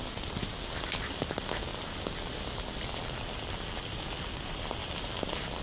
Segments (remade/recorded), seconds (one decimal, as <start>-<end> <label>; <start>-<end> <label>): 0.0-4.8 recorded; 4.8-5.6 remade